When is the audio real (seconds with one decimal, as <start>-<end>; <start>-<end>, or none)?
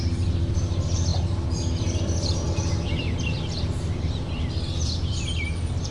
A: none